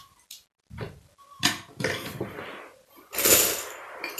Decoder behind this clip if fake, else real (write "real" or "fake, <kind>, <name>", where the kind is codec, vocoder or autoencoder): fake, vocoder, BigVGAN v2